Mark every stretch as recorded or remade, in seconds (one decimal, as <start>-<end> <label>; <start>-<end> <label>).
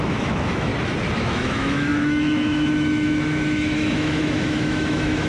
0.0-0.7 remade; 0.7-1.2 recorded; 1.2-5.3 remade